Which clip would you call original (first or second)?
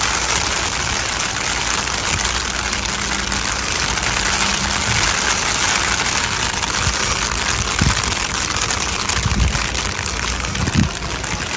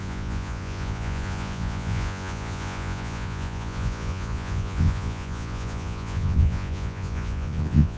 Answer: first